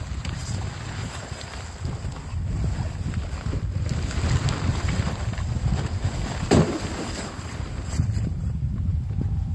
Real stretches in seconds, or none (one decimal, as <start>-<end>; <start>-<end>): 0.0-0.4; 1.5-4.7; 9.1-9.5